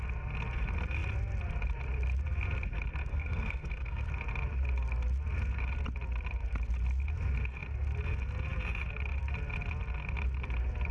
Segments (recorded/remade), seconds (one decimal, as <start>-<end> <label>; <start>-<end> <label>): 0.0-3.1 recorded; 3.1-4.1 remade; 4.1-10.9 recorded